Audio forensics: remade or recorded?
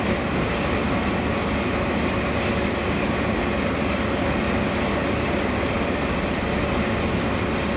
recorded